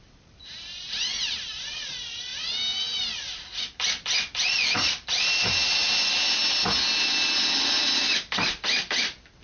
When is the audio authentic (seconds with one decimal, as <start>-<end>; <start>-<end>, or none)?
none